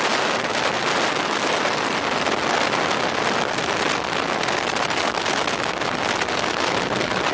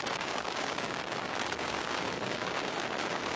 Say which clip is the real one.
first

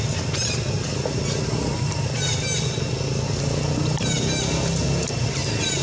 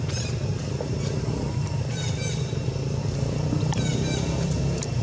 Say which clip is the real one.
first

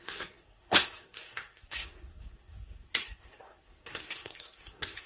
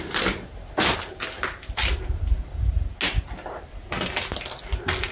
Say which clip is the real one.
second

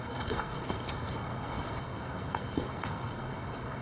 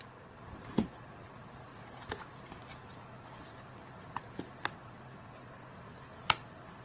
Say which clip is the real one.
second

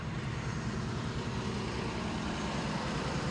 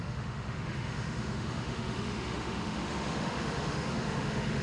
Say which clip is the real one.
first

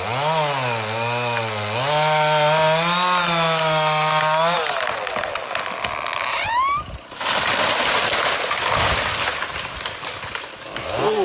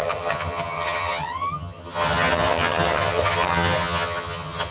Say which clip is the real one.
first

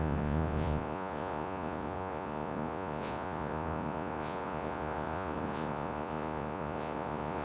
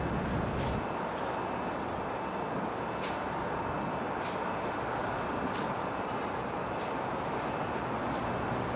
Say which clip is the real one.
second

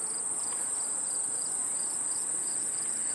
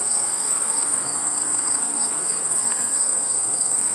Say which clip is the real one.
first